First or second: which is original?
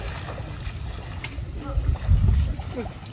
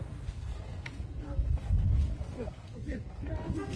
first